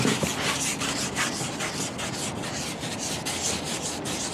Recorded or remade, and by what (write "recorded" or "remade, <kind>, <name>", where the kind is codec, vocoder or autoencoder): recorded